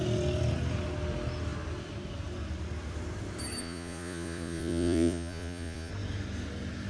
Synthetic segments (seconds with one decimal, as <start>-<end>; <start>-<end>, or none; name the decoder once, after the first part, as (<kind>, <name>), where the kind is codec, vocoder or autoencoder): 3.6-5.9 (vocoder, Vocos)